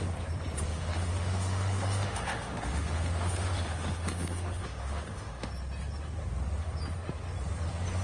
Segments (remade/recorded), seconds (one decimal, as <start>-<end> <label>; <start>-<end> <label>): 0.0-0.7 recorded; 0.7-5.5 remade; 5.5-8.0 recorded